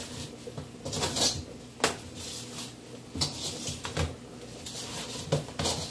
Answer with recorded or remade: recorded